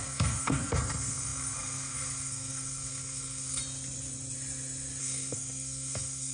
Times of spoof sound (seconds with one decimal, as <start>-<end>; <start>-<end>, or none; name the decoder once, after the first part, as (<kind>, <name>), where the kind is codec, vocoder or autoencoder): 0.0-3.6 (codec, SNAC); 5.0-6.3